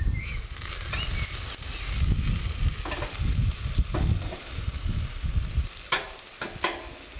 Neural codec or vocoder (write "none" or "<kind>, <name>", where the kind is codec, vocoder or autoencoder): none